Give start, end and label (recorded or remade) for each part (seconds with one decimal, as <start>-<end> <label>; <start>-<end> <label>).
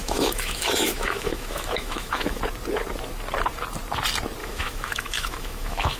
0.0-2.4 remade; 2.4-4.4 recorded; 4.4-6.0 remade